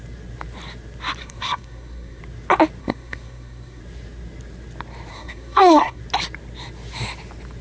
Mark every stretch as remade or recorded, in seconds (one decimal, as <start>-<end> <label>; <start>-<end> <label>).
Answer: 0.0-1.2 recorded; 1.2-2.2 remade; 2.2-2.8 recorded; 2.8-3.8 remade; 3.8-5.1 recorded; 5.1-6.0 remade; 6.0-7.6 recorded